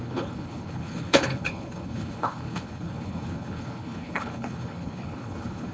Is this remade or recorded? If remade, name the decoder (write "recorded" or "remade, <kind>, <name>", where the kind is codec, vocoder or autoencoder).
remade, codec, HILCodec